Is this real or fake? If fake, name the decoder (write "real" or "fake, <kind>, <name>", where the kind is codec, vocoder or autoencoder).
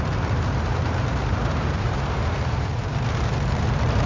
fake, vocoder, BigVGAN v2